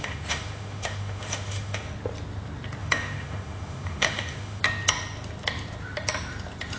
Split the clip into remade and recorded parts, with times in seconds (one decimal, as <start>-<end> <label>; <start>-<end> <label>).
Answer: 0.0-1.9 remade; 1.9-2.8 recorded; 2.8-4.6 remade; 4.6-6.8 recorded